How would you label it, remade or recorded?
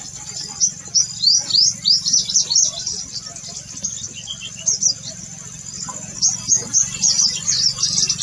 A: recorded